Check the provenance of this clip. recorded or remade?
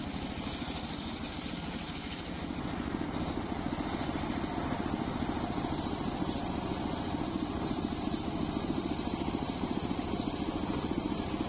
recorded